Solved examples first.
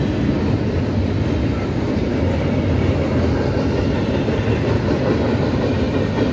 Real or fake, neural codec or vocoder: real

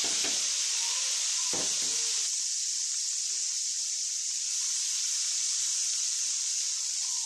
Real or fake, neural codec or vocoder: fake, vocoder, BigVGAN v2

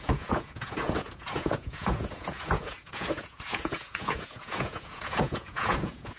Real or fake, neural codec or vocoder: fake, vocoder, Vocos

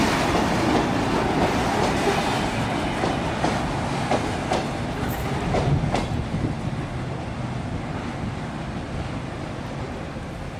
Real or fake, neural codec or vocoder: real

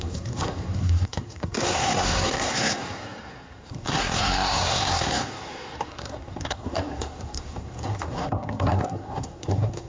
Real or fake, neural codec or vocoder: fake, codec, SNAC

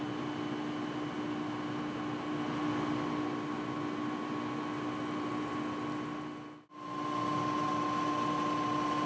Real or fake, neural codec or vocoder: real